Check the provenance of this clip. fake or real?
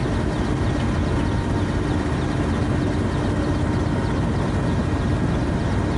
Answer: real